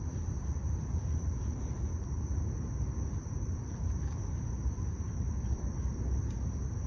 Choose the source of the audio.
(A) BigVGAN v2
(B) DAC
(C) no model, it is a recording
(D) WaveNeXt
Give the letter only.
A